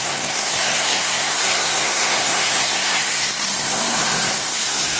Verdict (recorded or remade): remade